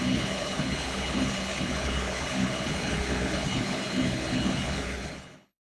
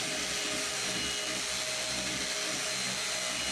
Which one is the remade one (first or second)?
first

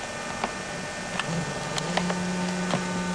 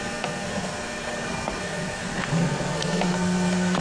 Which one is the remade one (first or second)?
second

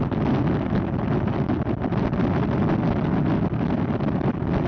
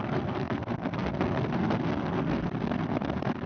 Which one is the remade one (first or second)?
second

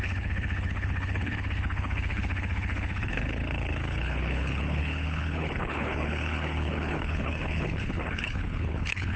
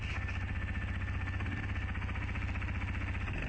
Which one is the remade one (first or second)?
first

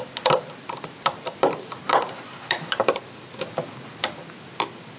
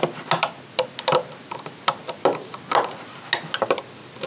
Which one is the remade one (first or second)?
first